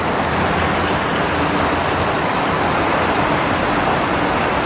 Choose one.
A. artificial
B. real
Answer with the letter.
B